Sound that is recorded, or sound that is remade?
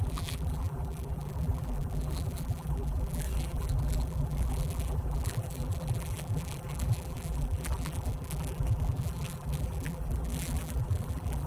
remade